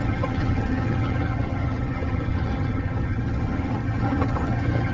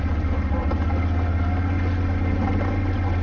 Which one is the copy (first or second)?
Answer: first